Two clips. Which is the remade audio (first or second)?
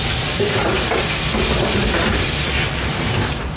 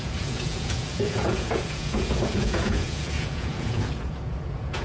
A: second